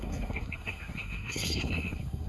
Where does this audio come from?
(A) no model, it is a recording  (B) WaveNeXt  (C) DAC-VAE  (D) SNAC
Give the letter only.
D